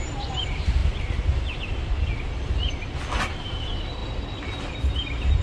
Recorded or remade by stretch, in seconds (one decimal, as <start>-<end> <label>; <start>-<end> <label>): 0.0-0.8 remade; 0.8-3.5 recorded; 3.5-4.0 remade; 4.0-4.7 recorded; 4.7-5.4 remade